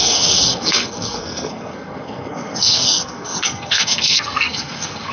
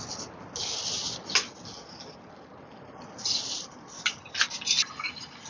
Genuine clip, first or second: second